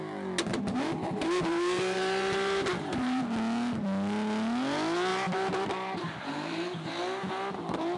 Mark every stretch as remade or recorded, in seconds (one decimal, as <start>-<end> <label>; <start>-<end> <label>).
0.0-0.5 recorded; 0.5-3.2 remade; 3.2-5.1 recorded; 5.1-6.9 remade; 6.9-8.0 recorded